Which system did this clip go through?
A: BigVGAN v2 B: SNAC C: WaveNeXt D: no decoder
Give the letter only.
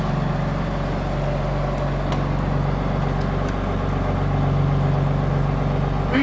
D